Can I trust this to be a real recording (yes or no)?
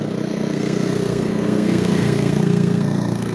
no